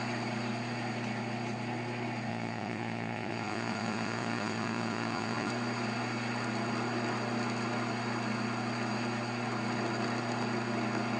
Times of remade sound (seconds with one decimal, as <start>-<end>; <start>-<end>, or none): 2.3-5.5